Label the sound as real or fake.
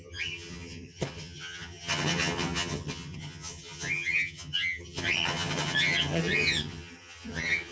fake